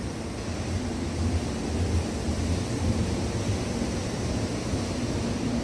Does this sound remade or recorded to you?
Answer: recorded